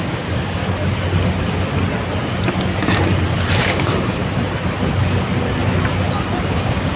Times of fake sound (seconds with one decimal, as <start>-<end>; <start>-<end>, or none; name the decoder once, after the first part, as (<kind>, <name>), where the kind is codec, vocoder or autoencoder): 0.0-0.6 (codec, DAC); 3.6-4.2; 6.4-7.0